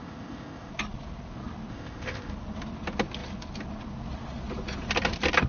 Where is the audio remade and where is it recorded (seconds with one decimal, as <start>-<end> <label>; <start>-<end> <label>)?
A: 0.0-0.7 remade; 0.7-1.7 recorded; 1.7-2.3 remade; 2.3-5.5 recorded